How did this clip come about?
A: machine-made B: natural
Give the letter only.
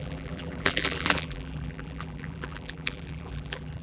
A